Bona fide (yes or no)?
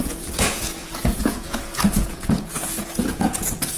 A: no